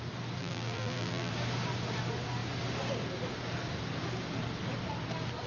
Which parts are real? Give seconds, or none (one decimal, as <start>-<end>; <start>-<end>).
0.0-0.4; 1.3-5.5